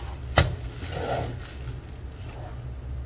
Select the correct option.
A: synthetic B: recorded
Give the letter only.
B